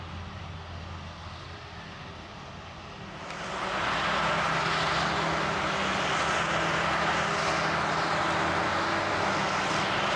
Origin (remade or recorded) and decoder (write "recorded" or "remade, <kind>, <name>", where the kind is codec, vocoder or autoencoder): recorded